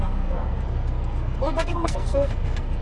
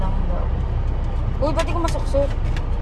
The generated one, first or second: first